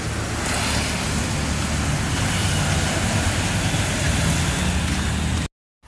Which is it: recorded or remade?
recorded